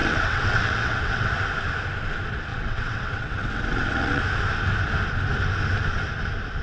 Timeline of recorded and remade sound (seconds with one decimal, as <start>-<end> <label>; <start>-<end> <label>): 0.0-1.3 remade; 1.3-2.5 recorded; 2.5-4.2 remade; 4.2-6.6 recorded